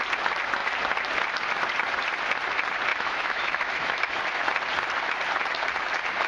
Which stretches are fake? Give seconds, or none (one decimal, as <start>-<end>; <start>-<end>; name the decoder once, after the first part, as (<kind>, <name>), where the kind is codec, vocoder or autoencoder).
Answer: 2.9-4.2 (autoencoder, DAC-VAE)